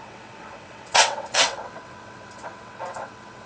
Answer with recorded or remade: remade